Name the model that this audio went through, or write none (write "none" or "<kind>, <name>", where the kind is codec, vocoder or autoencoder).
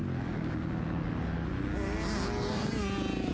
none